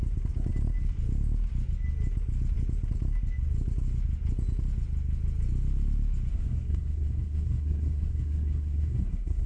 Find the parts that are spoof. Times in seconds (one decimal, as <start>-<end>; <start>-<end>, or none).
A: 6.3-9.5